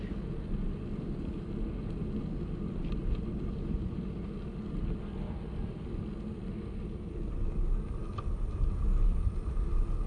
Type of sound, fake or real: real